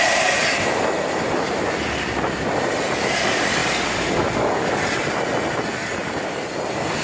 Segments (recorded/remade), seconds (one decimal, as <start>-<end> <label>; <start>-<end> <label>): 0.0-7.0 recorded